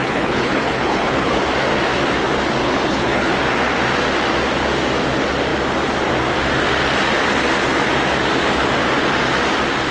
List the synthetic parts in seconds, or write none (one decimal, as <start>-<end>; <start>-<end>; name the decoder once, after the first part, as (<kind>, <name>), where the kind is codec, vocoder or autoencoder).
0.0-1.4 (codec, HILCodec); 2.6-3.3